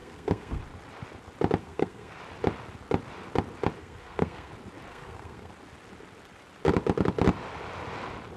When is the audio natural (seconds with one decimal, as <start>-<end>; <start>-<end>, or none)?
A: 0.6-1.6; 2.2-3.8; 4.5-4.9; 5.5-8.4